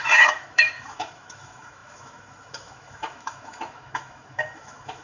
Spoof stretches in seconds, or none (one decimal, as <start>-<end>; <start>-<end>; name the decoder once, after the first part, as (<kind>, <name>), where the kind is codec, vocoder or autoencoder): 0.0-5.0 (autoencoder, DAC-VAE)